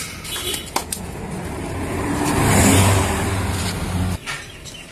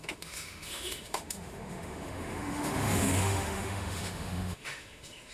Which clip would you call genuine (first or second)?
first